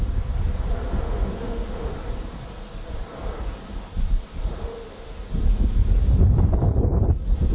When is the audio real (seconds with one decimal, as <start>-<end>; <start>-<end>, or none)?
0.0-0.9; 1.9-4.4; 5.1-7.5